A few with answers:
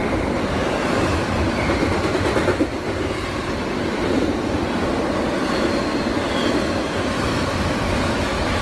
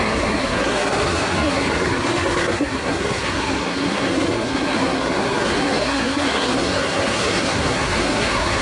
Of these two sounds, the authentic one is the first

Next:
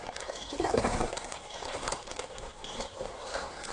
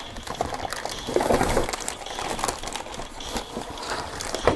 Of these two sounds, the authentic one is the second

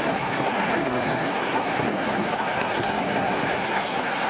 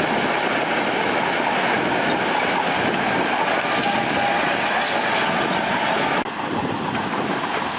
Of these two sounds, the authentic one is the second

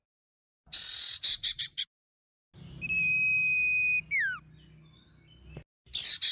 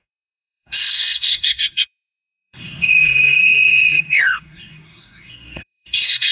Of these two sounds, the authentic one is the first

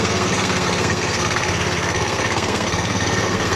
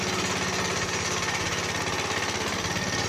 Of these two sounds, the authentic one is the second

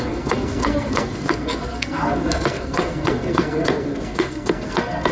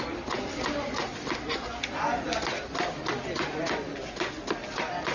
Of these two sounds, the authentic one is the second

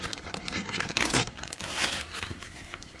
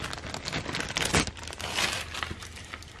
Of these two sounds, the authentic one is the second